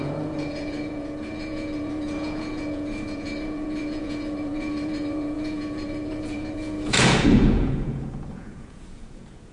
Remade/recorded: remade